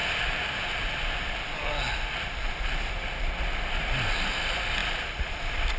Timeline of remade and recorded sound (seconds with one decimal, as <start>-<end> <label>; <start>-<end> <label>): 0.0-0.6 remade; 0.6-5.8 recorded

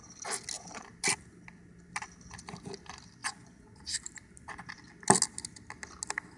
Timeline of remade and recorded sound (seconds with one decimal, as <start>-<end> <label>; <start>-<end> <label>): 0.0-3.2 recorded; 3.2-3.9 remade; 3.9-6.4 recorded

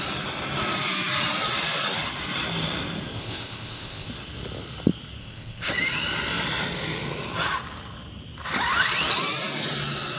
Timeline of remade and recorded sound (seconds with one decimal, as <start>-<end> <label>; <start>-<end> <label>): 0.0-3.1 recorded; 3.1-4.1 remade; 4.1-5.2 recorded; 5.2-5.7 remade; 5.7-10.2 recorded

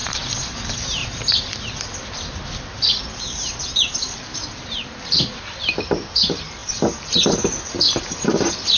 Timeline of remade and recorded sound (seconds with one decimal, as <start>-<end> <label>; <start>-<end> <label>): 0.0-0.5 recorded; 0.5-1.0 remade; 1.0-5.6 recorded; 5.6-8.8 remade

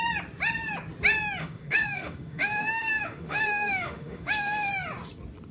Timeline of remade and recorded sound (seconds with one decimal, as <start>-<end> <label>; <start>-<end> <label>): 0.0-1.4 recorded; 1.4-4.7 remade; 4.7-5.5 recorded

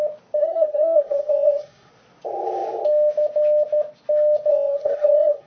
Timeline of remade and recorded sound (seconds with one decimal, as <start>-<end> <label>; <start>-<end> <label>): 0.0-0.4 recorded; 0.4-1.9 remade; 1.9-4.5 recorded; 4.5-5.5 remade